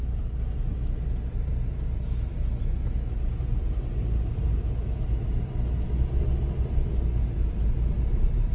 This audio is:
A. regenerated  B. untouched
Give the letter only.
B